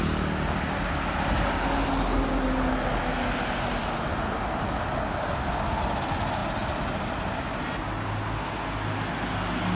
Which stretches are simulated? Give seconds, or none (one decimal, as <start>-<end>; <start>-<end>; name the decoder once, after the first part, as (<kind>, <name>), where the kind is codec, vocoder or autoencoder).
none